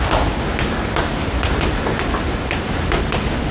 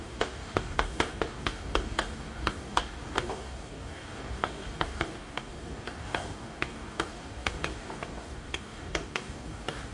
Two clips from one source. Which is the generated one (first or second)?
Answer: second